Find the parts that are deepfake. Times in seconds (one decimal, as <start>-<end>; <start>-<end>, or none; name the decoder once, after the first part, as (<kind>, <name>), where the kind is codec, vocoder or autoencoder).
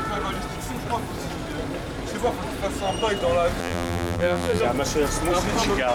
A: 3.6-4.6 (vocoder, BigVGAN v2)